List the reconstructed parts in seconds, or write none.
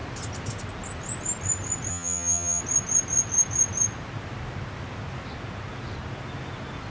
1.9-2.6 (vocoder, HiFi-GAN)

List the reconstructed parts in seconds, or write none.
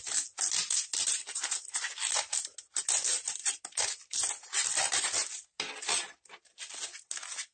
none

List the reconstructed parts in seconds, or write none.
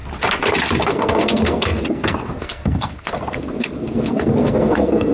0.8-5.1 (codec, SNAC)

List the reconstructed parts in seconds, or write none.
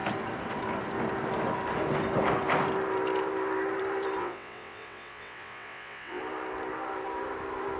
4.2-6.2 (vocoder, WaveNeXt)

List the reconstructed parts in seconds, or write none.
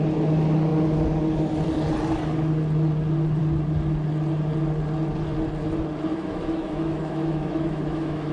6.1-8.3 (autoencoder, DAC-VAE)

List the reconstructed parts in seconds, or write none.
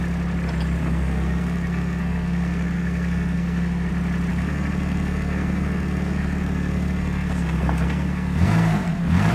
0.8-3.9 (codec, SNAC); 4.3-9.3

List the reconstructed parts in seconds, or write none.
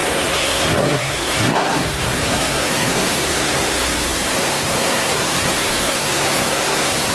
0.0-7.1 (codec, SNAC)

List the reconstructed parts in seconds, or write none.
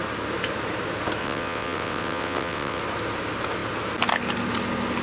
1.2-2.8 (vocoder, WaveNeXt)